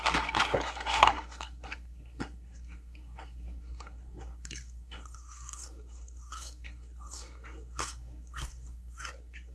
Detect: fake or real fake